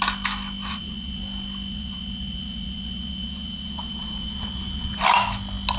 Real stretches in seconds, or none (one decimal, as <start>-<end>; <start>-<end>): 0.0-0.7; 1.2-1.7; 5.0-5.8